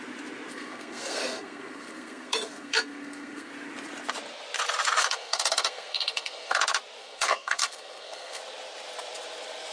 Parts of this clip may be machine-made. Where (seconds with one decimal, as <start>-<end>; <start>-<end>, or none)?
0.5-3.5; 5.0-6.6; 7.0-8.4